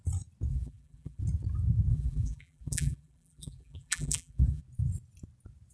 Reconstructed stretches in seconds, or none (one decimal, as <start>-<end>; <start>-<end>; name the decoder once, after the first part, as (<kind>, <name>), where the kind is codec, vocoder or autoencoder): 0.5-1.2 (vocoder, BigVGAN v2); 1.9-4.6